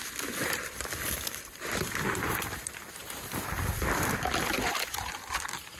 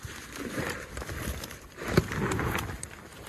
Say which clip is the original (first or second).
second